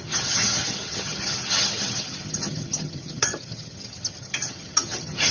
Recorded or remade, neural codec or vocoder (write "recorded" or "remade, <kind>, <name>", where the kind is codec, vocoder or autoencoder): remade, vocoder, HiFi-GAN